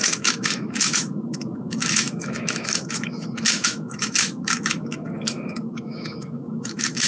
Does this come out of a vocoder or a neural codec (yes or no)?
yes